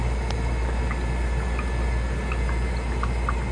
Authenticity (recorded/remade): recorded